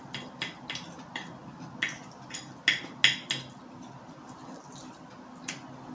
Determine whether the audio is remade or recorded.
recorded